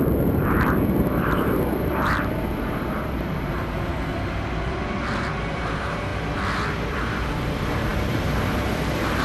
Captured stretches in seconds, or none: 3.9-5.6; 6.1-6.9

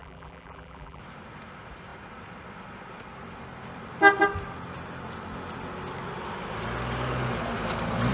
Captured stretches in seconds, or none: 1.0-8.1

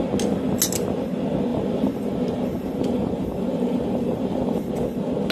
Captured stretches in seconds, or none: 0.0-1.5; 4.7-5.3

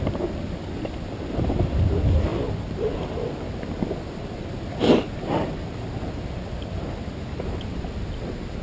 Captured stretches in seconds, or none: 0.0-2.3; 3.3-8.6

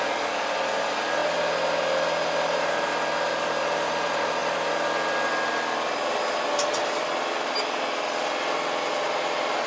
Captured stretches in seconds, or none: 0.0-9.7